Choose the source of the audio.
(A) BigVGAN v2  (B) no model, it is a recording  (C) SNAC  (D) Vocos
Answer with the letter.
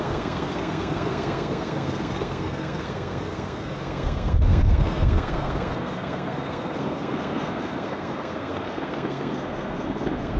C